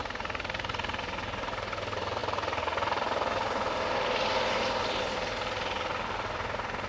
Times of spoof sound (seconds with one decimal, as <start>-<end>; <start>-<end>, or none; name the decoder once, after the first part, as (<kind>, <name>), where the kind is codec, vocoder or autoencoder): none